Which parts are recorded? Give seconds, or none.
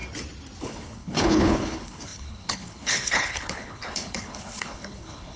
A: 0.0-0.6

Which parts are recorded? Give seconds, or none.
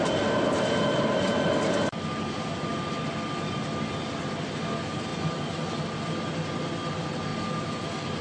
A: 0.0-8.2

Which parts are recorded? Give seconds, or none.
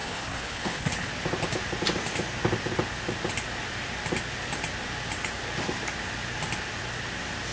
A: 1.1-7.5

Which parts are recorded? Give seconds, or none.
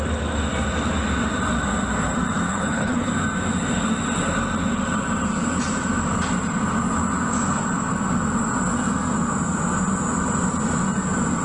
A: 0.0-2.5; 3.1-11.4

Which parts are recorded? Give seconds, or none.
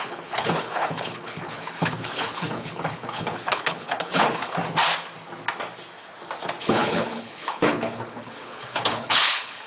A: 4.6-6.6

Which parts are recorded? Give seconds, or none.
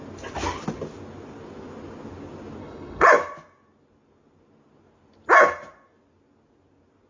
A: 0.0-2.6; 3.1-7.1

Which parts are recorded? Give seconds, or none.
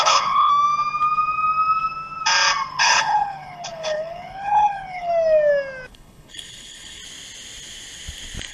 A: 0.5-2.7; 5.1-5.9; 7.0-8.5